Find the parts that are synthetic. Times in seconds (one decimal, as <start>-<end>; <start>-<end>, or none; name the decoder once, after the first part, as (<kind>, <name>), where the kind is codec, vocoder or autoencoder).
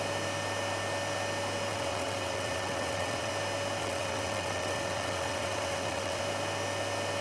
1.7-3.3 (vocoder, WaveNeXt); 3.8-6.2